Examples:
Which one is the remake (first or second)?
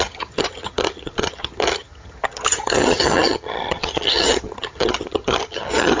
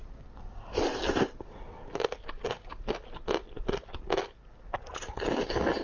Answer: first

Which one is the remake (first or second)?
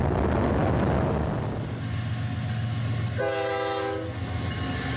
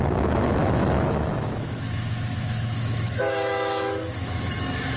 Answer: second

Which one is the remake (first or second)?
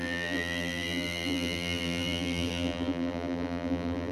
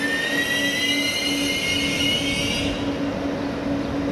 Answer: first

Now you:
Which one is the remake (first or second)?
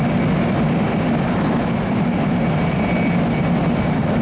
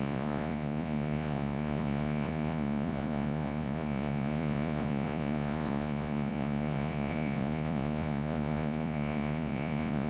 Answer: second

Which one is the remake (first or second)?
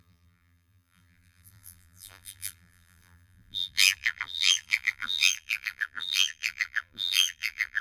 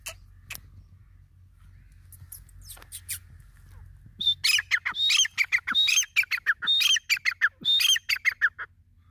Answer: first